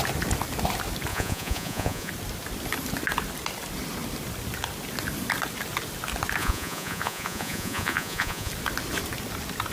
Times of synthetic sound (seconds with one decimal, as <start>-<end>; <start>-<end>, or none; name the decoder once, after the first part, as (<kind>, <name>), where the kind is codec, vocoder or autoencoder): 1.1-2.1 (vocoder, Vocos); 6.4-8.5